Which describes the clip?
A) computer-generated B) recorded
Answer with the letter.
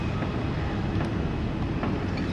B